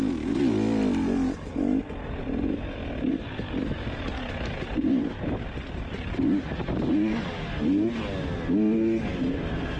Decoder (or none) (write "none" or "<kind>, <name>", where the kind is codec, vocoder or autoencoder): none